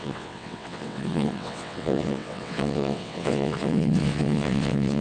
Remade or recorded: remade